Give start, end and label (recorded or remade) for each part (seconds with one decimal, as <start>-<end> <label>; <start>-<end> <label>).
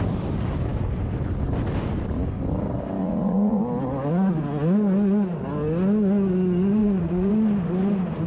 0.0-3.0 recorded; 3.0-3.6 remade; 3.6-6.8 recorded; 6.8-7.3 remade; 7.3-8.3 recorded